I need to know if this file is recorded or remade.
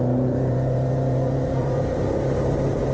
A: remade